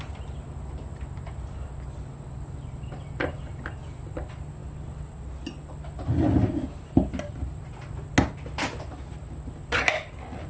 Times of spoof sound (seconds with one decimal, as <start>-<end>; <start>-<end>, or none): none

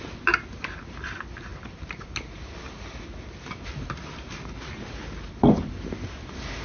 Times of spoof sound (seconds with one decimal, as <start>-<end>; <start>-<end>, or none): none

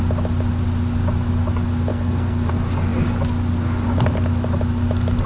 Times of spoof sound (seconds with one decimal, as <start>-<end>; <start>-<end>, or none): 1.9-2.5

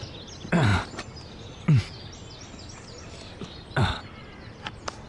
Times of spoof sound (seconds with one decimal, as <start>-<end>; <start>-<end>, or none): none

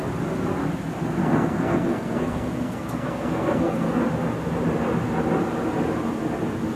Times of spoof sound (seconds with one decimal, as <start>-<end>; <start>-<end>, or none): 1.2-4.0

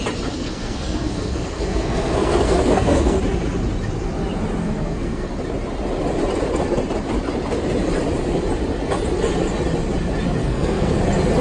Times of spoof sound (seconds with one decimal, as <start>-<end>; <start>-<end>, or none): 0.4-3.2; 4.6-5.3; 10.4-11.0

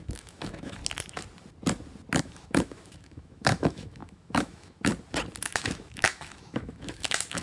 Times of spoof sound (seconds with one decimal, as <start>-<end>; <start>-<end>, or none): 0.0-0.8; 2.2-4.9; 5.4-7.4